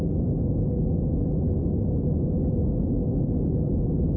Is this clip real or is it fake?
real